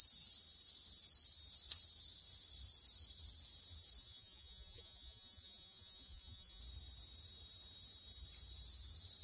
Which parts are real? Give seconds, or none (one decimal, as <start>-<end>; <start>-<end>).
0.0-4.0; 6.6-9.2